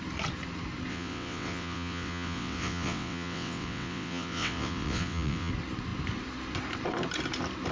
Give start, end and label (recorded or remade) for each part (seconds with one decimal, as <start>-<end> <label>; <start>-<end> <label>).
0.0-0.9 recorded; 0.9-5.5 remade; 5.5-7.7 recorded